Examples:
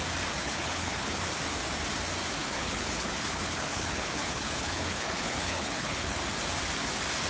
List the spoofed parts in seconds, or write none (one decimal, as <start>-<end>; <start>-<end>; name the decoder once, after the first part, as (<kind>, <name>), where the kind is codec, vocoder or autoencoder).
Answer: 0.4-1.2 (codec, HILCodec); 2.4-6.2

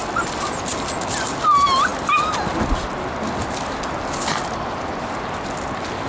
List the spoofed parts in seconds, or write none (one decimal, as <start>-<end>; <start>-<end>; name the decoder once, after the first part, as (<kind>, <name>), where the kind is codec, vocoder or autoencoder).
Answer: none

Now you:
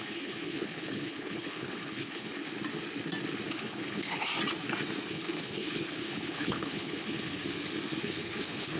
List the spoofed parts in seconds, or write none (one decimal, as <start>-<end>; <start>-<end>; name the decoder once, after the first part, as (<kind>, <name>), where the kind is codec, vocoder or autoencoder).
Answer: 0.0-2.3 (codec, HILCodec); 3.5-4.3; 5.1-7.4; 8.0-8.8

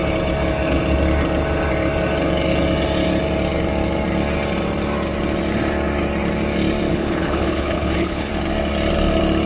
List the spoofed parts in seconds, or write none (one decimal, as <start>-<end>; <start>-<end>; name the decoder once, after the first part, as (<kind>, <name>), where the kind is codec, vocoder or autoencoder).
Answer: 6.9-8.3 (codec, HILCodec)

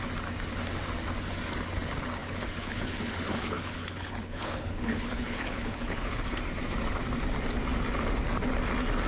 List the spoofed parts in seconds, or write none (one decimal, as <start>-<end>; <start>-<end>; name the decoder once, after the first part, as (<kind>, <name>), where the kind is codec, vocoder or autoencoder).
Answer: 2.2-6.2 (codec, HILCodec)

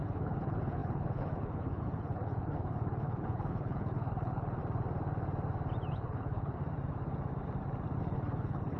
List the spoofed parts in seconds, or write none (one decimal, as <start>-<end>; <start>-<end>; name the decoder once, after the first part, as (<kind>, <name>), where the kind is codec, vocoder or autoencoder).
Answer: 0.0-4.6 (codec, HILCodec); 5.9-6.6; 8.0-8.8

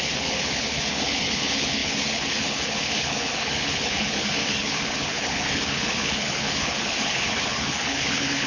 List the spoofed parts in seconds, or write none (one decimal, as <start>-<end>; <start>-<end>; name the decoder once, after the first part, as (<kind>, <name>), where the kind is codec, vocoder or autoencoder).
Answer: 0.0-8.5 (codec, HILCodec)

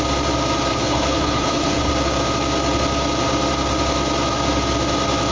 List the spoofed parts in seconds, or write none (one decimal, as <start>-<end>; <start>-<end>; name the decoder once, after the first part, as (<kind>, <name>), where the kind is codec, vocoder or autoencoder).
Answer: 0.7-1.9 (codec, HILCodec)